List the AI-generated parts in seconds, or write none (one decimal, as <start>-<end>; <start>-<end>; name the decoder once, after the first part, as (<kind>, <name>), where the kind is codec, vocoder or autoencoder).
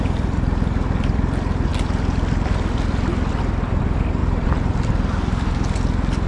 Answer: none